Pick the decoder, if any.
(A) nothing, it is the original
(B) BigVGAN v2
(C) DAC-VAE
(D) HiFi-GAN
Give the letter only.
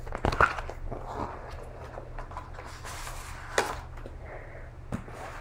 A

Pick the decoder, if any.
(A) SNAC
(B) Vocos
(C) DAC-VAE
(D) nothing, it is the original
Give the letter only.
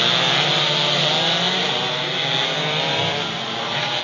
D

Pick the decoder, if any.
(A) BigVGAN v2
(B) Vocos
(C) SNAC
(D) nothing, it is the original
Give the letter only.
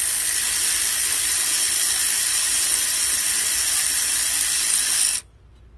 D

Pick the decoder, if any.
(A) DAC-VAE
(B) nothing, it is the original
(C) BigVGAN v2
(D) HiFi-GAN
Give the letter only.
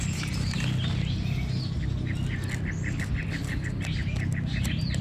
B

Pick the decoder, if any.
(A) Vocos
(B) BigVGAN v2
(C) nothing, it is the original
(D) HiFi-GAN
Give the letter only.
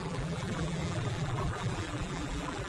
B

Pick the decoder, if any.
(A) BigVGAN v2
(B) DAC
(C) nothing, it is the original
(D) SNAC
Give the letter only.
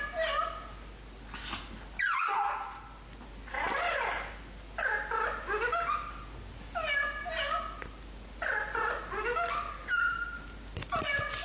C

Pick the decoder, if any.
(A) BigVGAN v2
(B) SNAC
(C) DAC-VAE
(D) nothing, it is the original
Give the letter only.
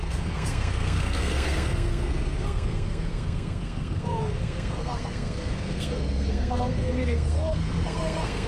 B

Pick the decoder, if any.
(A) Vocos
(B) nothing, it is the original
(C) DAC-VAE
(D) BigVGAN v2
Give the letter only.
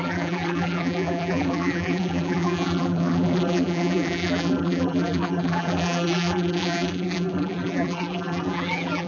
D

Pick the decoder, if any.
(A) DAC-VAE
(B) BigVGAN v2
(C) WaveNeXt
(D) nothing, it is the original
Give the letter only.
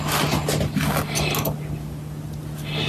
D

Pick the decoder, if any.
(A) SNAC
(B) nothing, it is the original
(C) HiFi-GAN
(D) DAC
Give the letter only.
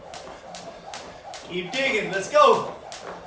B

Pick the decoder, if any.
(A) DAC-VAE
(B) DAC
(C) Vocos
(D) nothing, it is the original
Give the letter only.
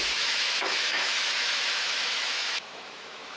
A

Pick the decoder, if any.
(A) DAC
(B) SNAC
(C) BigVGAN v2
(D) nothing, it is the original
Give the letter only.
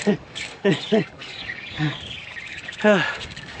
A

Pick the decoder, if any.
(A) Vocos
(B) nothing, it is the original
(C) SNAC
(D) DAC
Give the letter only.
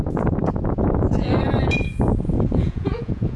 A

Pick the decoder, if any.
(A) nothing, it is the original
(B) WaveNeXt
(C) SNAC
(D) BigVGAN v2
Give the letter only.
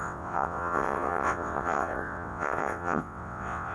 B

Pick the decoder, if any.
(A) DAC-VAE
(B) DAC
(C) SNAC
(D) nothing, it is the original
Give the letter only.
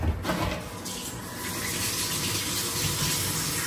D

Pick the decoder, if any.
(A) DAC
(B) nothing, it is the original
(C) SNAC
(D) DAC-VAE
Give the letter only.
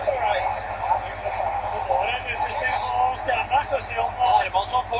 B